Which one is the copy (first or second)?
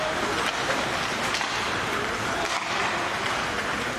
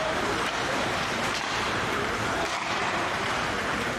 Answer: second